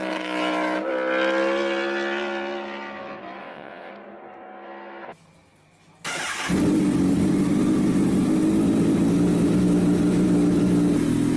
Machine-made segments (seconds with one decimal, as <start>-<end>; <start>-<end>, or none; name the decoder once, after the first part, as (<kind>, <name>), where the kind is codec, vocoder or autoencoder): 3.4-3.9 (vocoder, WaveNeXt)